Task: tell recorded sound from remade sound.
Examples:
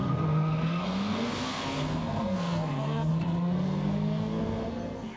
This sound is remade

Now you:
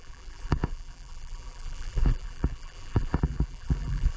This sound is remade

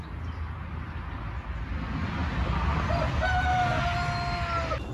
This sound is recorded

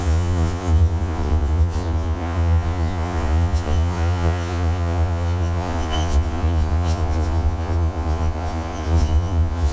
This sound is remade